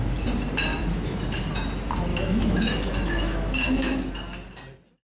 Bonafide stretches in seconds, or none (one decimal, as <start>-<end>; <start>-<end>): 0.0-0.7; 1.2-2.1; 4.1-5.1